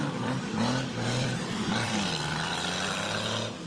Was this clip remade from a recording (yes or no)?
yes